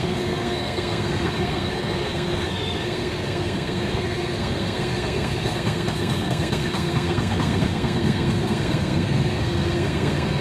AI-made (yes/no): yes